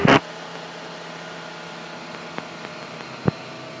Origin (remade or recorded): recorded